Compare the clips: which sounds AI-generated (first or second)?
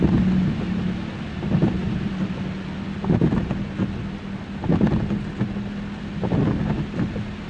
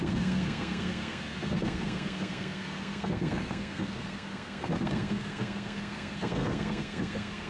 second